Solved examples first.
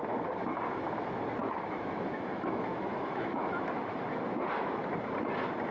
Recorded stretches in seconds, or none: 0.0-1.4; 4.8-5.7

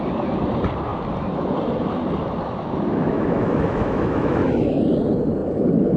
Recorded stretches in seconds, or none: 0.0-2.9; 4.8-6.0

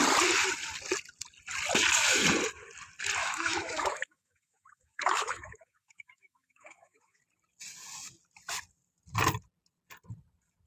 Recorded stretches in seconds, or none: 0.0-3.2; 7.2-10.7

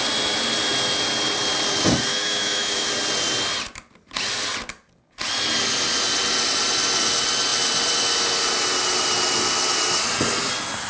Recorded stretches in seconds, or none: 0.0-2.1; 2.9-10.9